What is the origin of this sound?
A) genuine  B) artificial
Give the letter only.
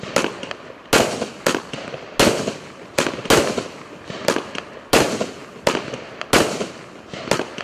A